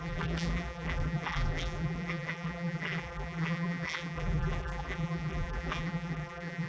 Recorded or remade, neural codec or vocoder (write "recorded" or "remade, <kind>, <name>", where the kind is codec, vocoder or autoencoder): remade, vocoder, BigVGAN v2